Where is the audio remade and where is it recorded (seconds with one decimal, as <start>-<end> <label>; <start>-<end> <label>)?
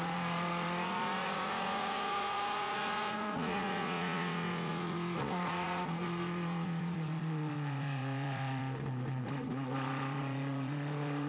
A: 0.0-8.6 remade; 8.6-9.2 recorded; 9.2-11.3 remade